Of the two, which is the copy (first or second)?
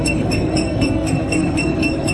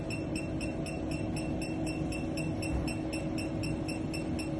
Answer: first